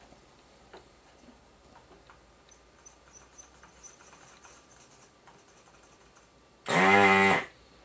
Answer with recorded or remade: recorded